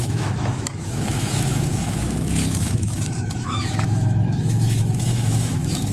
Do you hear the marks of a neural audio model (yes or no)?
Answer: yes